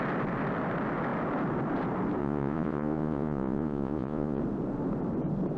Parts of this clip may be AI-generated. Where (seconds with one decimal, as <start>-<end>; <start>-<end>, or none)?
2.2-4.4